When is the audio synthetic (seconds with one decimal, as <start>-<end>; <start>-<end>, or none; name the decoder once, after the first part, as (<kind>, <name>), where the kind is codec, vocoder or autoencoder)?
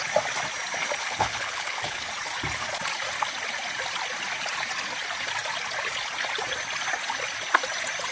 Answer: 1.0-2.1 (codec, HILCodec)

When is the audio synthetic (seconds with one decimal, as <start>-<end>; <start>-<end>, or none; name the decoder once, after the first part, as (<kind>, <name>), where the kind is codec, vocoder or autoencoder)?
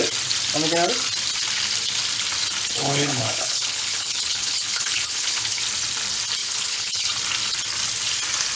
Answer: 2.8-5.6 (codec, HILCodec); 6.4-7.1